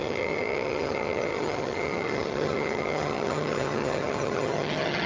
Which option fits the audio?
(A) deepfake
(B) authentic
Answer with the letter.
A